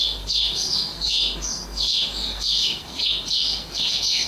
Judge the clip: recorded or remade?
remade